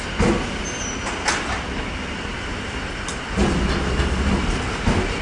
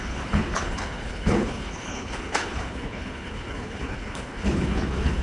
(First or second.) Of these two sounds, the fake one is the second